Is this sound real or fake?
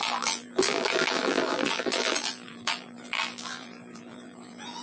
fake